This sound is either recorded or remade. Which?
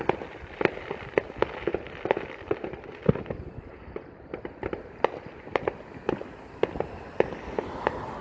recorded